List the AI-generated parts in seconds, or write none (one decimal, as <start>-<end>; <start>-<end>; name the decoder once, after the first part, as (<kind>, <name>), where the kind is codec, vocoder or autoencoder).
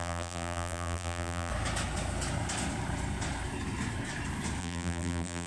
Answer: 0.0-1.5 (vocoder, BigVGAN v2); 4.6-5.5